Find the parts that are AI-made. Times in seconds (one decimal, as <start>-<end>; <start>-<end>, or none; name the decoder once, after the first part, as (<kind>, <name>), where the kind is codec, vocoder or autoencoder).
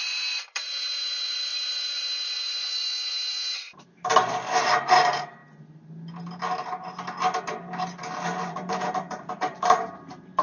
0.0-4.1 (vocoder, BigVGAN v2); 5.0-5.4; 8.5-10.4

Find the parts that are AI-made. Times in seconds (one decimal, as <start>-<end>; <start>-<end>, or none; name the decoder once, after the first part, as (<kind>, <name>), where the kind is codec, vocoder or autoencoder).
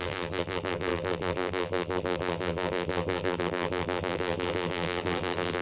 0.0-5.6 (vocoder, BigVGAN v2)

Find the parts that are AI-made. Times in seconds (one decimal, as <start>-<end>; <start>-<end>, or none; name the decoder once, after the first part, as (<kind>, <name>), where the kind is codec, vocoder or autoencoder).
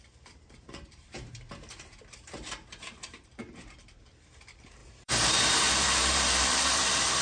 0.0-7.2 (vocoder, BigVGAN v2)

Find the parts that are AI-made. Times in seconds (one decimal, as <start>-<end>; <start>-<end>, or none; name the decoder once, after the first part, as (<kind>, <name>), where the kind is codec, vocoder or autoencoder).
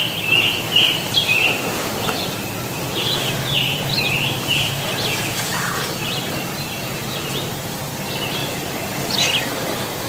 0.5-5.1 (vocoder, BigVGAN v2); 8.4-8.9